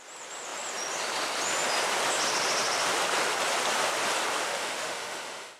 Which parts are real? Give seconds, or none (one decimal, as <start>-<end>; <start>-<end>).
0.0-4.4